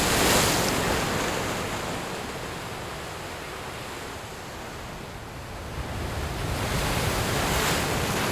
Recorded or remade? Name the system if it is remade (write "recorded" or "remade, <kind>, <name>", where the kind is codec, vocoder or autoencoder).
recorded